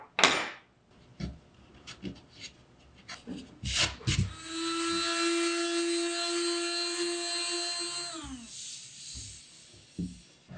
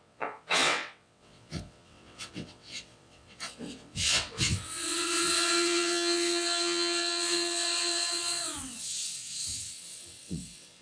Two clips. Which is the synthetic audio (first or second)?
second